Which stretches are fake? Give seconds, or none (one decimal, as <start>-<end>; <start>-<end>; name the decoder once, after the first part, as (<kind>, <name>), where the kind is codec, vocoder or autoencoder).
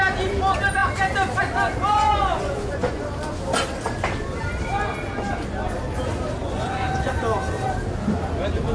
1.9-3.0 (vocoder, Vocos); 6.4-7.1